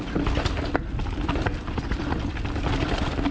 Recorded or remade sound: recorded